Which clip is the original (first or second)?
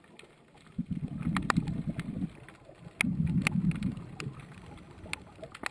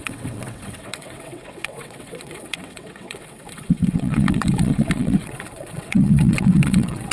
first